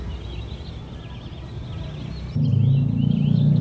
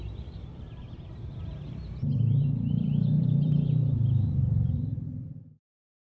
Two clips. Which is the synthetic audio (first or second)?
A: second